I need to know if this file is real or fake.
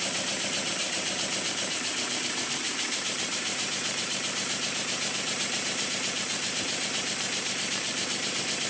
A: fake